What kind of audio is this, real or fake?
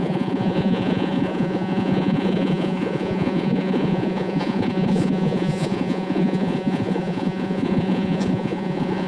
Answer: fake